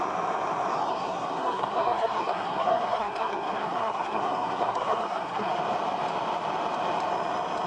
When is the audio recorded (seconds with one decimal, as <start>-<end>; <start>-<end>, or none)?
0.0-0.9; 5.5-7.7